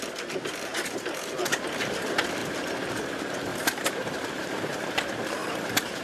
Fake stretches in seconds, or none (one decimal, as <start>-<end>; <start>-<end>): 3.5-5.0; 5.4-6.0